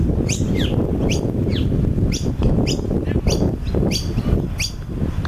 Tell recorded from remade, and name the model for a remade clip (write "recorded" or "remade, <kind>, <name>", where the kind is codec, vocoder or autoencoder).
remade, vocoder, BigVGAN v2